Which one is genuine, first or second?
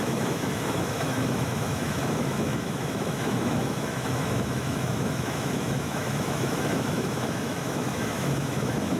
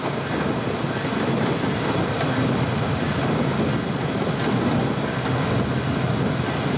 second